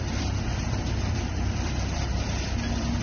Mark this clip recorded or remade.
remade